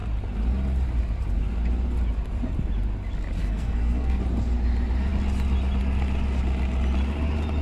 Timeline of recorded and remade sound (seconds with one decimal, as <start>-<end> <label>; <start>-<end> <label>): 0.0-3.4 recorded; 3.4-4.2 remade; 4.2-7.6 recorded